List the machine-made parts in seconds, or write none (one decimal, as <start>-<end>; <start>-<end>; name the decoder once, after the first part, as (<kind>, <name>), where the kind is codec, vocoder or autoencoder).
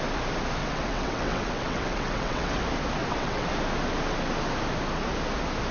0.6-2.6 (vocoder, WaveNeXt); 3.0-3.5